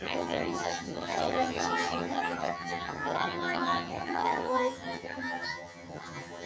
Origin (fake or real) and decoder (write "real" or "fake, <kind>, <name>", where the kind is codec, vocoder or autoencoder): fake, vocoder, HiFi-GAN